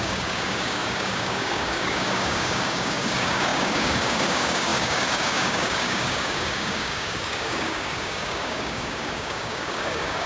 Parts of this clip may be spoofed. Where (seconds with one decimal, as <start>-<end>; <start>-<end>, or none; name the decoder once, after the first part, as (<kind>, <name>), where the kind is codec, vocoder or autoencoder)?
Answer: 0.0-10.3 (codec, DAC)